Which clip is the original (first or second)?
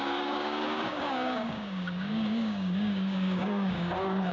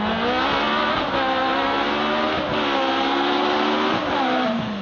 second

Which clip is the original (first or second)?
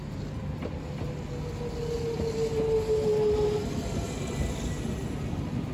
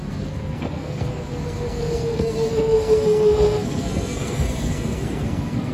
first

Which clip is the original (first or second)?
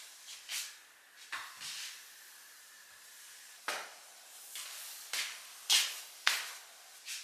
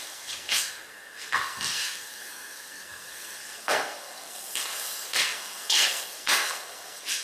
first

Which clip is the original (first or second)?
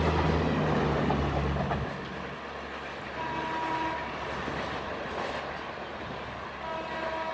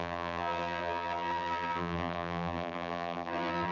first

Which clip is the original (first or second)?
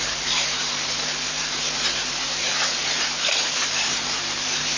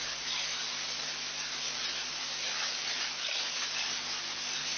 second